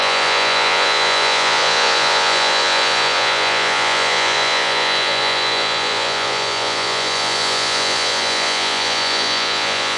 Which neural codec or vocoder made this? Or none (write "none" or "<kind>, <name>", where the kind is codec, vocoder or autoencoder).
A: vocoder, Vocos